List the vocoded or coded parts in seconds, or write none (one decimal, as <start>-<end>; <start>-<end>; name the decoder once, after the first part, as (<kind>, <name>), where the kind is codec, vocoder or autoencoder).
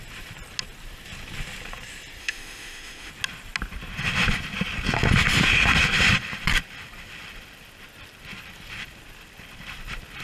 2.2-3.1 (autoencoder, DAC-VAE)